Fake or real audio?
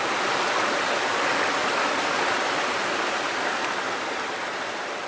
real